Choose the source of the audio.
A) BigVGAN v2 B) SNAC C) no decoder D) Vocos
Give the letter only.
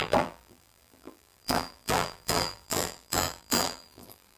A